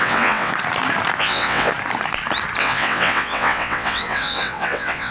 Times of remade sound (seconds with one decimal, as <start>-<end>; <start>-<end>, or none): 0.0-0.5; 1.2-1.7; 2.6-5.1